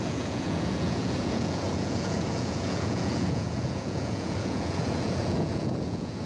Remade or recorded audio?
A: remade